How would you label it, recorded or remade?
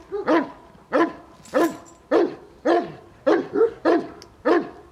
recorded